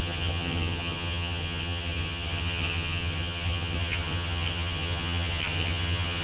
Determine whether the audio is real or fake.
fake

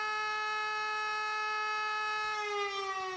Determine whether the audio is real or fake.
real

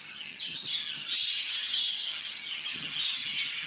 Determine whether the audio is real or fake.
fake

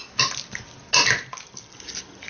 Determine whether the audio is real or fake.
real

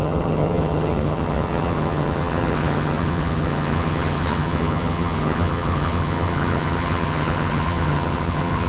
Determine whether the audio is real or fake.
fake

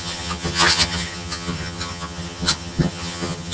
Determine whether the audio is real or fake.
fake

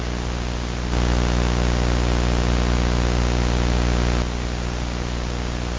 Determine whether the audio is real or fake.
real